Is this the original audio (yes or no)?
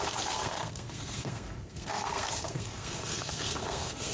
no